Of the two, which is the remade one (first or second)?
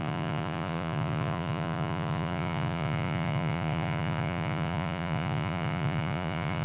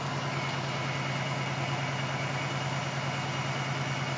first